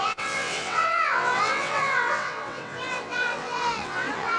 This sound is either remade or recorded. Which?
remade